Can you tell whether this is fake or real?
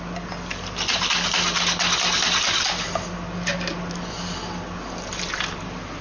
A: real